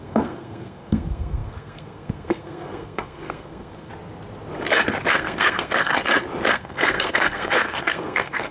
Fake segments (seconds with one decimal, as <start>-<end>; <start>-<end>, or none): 0.0-3.9; 5.1-5.9; 6.5-8.5